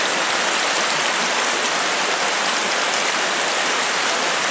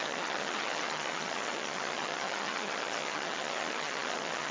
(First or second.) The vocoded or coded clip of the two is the second